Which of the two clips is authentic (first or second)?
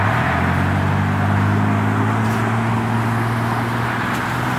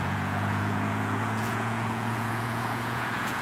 first